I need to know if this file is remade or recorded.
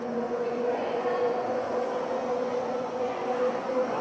remade